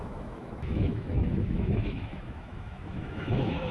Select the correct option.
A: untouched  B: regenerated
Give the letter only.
B